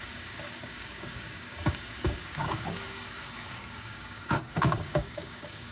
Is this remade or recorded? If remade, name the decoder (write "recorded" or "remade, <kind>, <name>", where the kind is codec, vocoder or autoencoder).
remade, codec, DAC